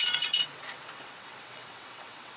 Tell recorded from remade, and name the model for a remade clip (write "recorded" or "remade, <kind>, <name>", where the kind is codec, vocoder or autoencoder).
remade, vocoder, WaveNeXt